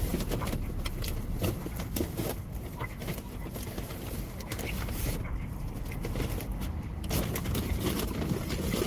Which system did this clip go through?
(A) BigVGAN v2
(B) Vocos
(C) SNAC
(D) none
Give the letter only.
D